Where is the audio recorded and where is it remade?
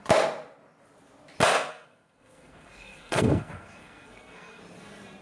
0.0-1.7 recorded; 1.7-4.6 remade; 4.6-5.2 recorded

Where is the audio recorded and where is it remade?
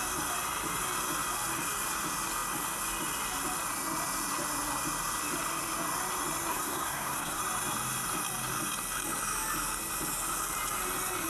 0.0-6.5 recorded; 6.5-7.4 remade; 7.4-11.3 recorded